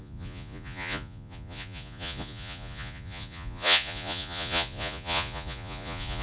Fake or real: fake